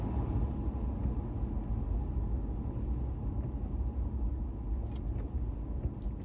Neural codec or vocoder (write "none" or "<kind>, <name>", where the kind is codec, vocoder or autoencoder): none